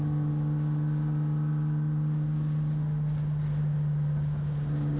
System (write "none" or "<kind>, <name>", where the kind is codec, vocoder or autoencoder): none